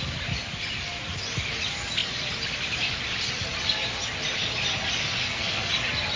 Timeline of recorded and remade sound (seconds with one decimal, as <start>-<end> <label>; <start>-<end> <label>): 0.0-5.2 recorded; 5.2-5.7 remade; 5.7-6.2 recorded